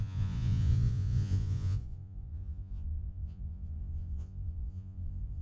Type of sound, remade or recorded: remade